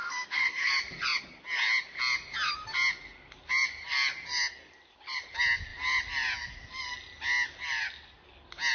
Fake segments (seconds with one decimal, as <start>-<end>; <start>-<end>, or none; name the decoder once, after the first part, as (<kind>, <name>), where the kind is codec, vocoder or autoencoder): 0.0-0.7 (codec, SNAC)